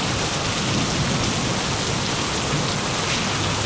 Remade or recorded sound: recorded